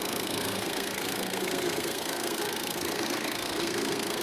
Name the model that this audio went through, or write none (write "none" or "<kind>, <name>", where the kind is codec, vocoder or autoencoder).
codec, SNAC